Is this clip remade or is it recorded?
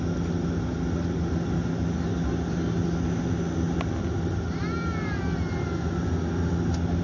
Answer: recorded